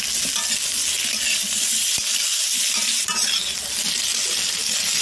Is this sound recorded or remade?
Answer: recorded